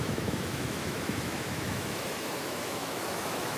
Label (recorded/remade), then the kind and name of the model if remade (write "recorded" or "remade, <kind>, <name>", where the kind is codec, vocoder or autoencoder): remade, autoencoder, DAC-VAE